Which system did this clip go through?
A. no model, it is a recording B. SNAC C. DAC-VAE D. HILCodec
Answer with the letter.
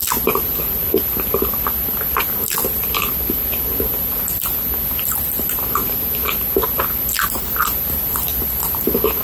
A